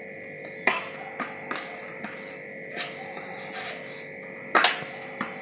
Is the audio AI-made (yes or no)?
no